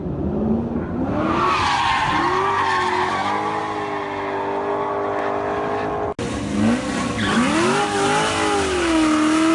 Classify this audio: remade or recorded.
recorded